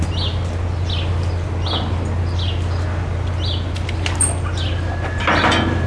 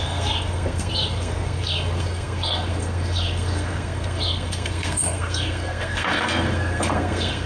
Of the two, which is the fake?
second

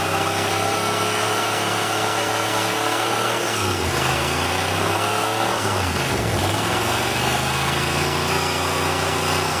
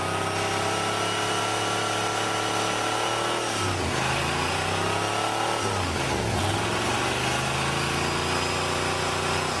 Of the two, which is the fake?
first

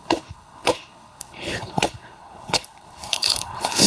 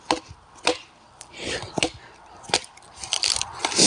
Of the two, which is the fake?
first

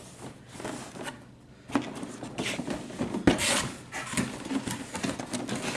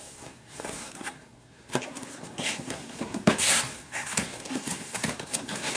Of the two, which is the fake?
second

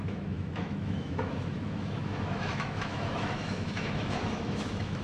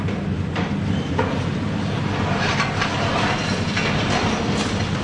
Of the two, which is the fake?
first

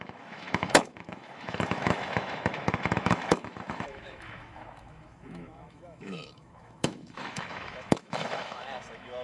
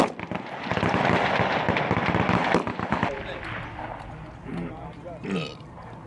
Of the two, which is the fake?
first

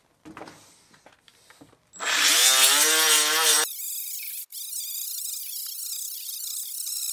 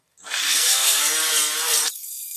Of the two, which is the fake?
second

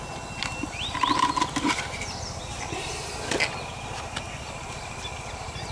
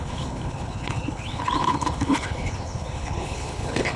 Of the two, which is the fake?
second